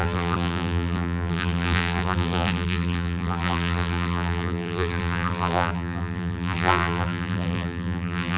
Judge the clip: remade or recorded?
remade